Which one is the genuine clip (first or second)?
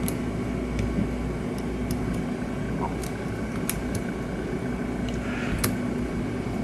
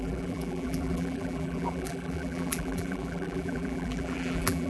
first